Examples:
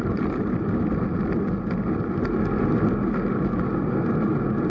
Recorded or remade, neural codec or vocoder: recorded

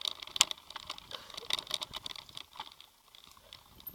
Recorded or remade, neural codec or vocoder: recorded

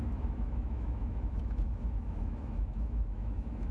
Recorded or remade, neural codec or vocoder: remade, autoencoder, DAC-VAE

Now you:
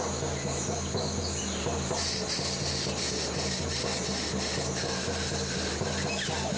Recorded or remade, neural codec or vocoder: recorded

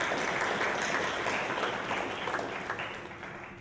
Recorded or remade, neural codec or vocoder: recorded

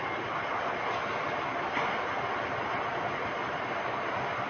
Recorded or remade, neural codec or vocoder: recorded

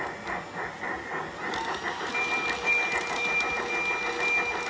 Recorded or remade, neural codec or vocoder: recorded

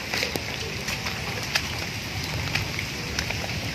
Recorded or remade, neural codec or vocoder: recorded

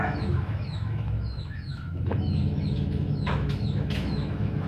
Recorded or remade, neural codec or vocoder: remade, autoencoder, DAC-VAE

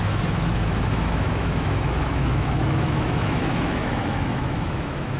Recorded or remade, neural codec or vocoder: remade, autoencoder, DAC-VAE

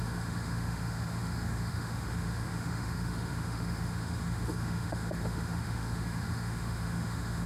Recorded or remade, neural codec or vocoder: remade, autoencoder, DAC-VAE